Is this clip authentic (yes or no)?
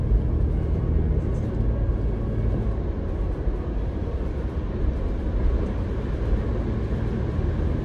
yes